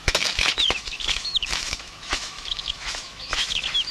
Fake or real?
fake